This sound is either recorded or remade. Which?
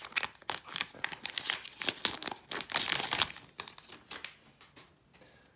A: recorded